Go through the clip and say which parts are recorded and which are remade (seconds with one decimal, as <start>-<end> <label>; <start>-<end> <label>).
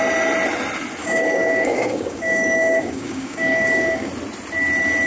0.0-1.0 recorded; 1.0-4.1 remade; 4.1-5.1 recorded